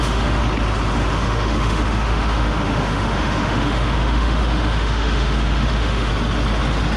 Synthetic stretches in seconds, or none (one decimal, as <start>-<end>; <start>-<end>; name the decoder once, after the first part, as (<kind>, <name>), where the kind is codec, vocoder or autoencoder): 0.0-0.4 (autoencoder, DAC-VAE); 0.9-6.1